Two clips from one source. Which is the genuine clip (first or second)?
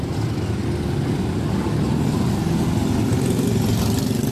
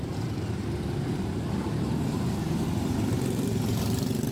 first